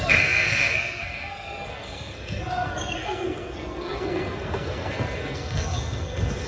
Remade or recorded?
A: remade